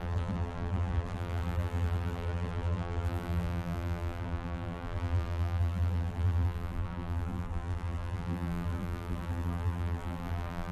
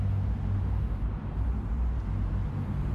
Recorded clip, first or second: second